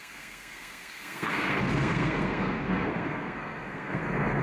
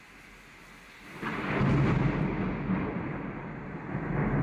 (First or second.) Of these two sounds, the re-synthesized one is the first